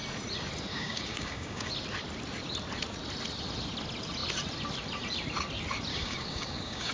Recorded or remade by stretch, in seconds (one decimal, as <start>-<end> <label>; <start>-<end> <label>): 0.0-0.7 recorded; 0.7-1.7 remade; 1.7-5.9 recorded; 5.9-6.9 remade